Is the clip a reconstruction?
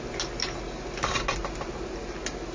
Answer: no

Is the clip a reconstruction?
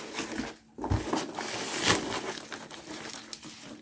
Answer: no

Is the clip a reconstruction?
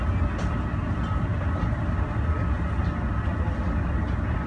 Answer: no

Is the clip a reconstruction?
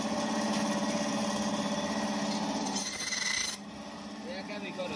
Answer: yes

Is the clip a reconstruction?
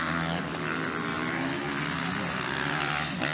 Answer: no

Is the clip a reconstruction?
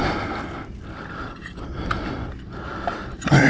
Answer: yes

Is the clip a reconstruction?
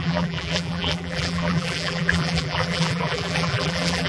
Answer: yes